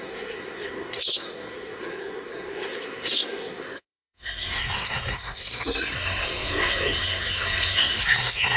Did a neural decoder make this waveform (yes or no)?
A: yes